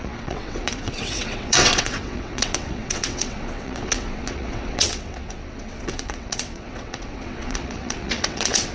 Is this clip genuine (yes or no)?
no